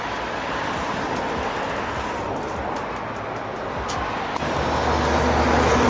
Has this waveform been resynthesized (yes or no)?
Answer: no